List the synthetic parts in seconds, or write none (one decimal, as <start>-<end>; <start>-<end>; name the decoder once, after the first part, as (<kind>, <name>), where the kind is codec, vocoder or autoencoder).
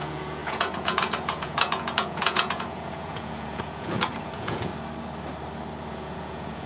0.0-4.7 (vocoder, Vocos); 5.9-6.7